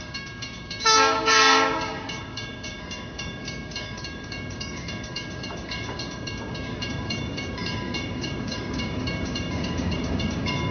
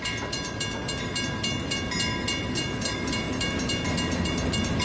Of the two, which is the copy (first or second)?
first